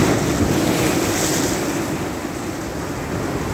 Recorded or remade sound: recorded